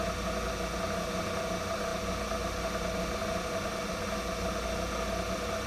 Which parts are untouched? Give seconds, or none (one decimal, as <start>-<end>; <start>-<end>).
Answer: 0.0-5.7